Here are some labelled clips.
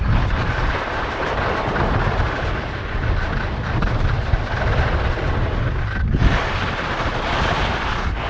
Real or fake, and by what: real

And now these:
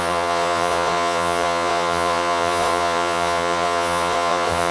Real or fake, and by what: fake, vocoder, Vocos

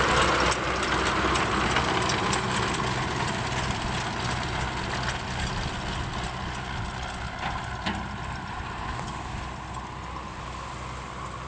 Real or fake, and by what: real